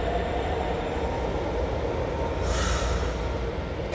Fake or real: real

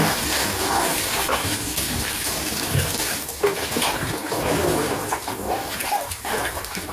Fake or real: fake